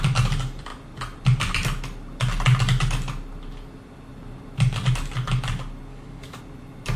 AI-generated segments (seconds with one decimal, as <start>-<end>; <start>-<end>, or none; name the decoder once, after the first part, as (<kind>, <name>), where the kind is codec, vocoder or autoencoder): 5.9-6.4 (codec, DAC)